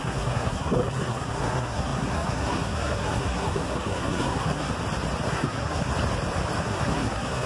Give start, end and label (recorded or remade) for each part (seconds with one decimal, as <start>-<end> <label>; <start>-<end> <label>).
0.0-4.7 remade; 4.7-5.3 recorded; 5.3-5.9 remade; 5.9-6.6 recorded; 6.6-7.5 remade